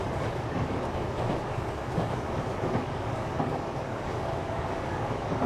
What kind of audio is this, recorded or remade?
remade